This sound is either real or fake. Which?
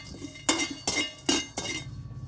real